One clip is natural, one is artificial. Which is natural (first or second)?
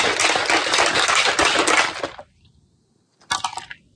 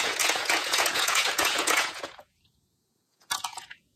first